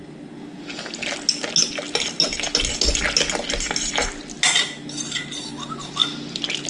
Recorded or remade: recorded